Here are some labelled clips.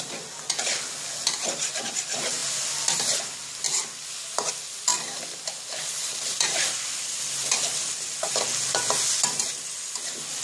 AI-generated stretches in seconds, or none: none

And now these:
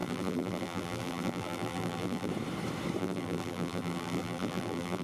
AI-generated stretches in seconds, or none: 0.0-2.3 (vocoder, BigVGAN v2); 3.0-5.0

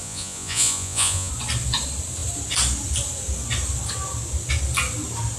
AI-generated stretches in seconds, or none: 0.0-1.3 (vocoder, Vocos)

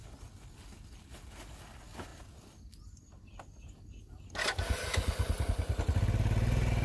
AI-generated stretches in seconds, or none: none

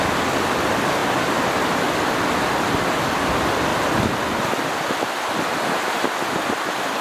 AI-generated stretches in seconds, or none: none

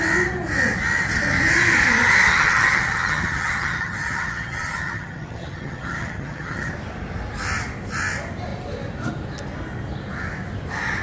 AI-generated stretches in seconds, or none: 2.3-6.7 (vocoder, HiFi-GAN)

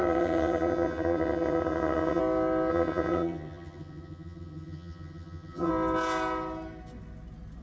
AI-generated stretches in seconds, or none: 0.0-2.2 (vocoder, HiFi-GAN); 2.7-5.7

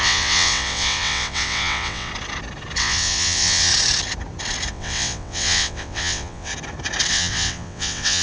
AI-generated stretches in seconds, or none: 0.0-2.1 (vocoder, WaveNeXt); 2.8-3.7; 4.7-6.5; 7.1-8.2